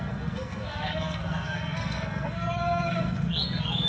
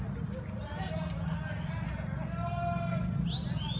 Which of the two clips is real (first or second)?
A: second